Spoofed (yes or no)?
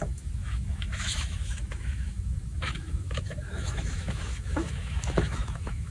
yes